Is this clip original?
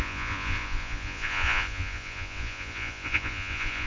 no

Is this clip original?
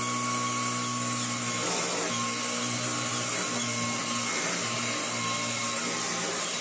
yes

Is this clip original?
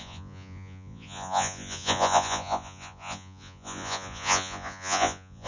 no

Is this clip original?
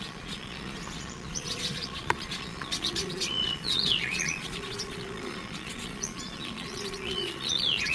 no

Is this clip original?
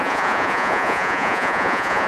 no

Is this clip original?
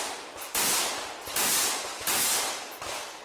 yes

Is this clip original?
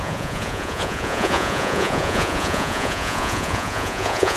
no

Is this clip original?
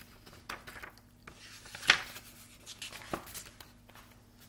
yes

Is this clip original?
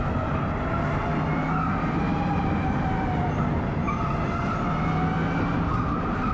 yes